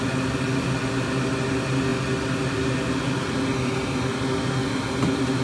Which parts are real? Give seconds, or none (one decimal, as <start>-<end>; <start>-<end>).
0.0-5.4